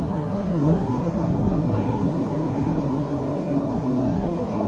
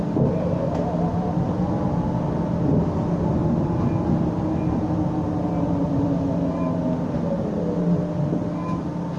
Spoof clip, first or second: first